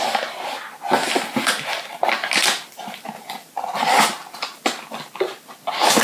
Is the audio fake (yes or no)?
no